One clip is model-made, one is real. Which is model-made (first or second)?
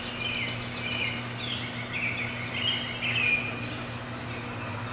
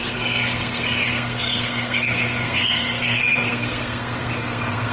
second